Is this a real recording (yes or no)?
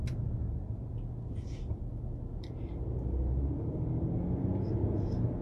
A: yes